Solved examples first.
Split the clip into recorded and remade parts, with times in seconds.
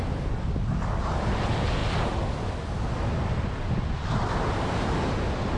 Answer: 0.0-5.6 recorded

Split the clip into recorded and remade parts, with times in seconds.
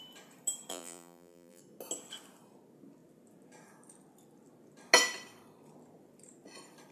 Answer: 0.0-0.7 recorded; 0.7-1.6 remade; 1.6-6.9 recorded